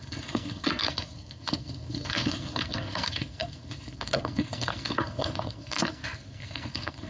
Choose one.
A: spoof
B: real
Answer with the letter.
A